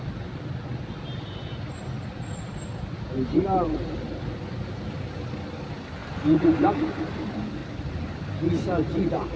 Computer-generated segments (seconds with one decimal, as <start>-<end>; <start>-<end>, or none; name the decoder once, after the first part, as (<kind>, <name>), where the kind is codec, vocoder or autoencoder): 6.0-6.7 (vocoder, BigVGAN v2); 7.6-8.3